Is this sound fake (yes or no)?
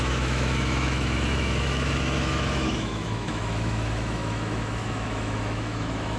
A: yes